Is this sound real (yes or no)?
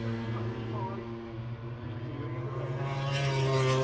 yes